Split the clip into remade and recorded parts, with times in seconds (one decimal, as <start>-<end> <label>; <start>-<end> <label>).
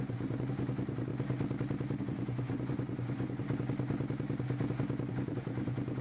0.0-1.1 remade; 1.1-2.0 recorded; 2.0-3.4 remade; 3.4-5.1 recorded; 5.1-6.0 remade